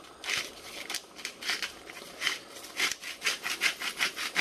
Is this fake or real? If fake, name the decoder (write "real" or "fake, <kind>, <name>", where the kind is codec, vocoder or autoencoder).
real